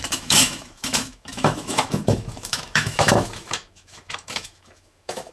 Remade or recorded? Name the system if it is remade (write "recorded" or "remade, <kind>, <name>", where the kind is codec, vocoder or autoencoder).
remade, autoencoder, DAC-VAE